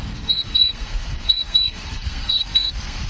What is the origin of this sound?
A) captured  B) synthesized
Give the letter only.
B